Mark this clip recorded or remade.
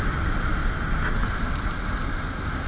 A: recorded